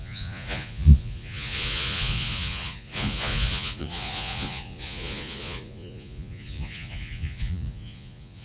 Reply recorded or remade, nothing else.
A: remade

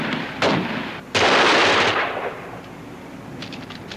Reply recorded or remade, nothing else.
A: recorded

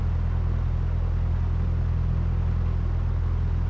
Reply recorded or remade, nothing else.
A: recorded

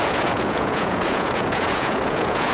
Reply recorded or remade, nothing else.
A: remade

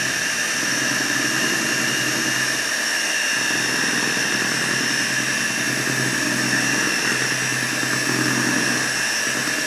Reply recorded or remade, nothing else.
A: recorded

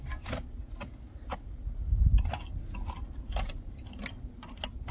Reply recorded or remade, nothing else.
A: recorded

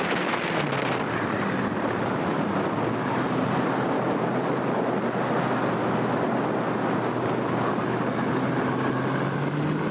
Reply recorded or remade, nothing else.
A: recorded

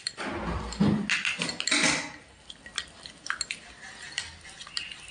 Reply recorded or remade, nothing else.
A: recorded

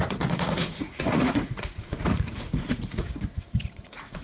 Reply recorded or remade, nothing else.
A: remade